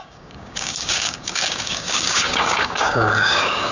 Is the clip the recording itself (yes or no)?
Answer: no